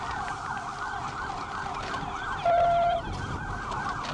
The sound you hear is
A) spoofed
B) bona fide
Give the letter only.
A